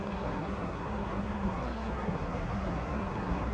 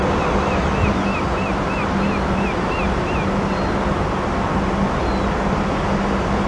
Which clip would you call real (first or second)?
second